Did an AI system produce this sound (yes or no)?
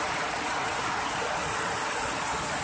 no